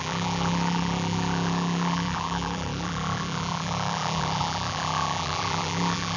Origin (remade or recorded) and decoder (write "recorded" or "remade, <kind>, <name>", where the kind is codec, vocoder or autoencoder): remade, vocoder, BigVGAN v2